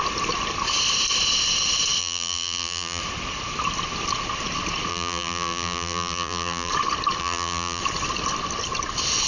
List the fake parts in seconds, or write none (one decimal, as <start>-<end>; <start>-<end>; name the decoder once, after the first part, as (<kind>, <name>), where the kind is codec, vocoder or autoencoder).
2.0-3.0 (vocoder, BigVGAN v2); 4.9-6.7; 7.2-7.8